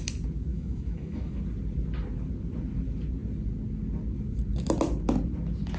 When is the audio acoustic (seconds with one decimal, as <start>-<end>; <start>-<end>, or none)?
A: 0.0-0.5; 1.4-5.8